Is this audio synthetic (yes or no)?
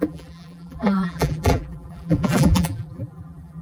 yes